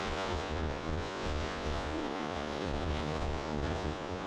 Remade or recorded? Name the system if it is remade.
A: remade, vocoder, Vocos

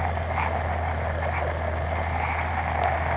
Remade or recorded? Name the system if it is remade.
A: recorded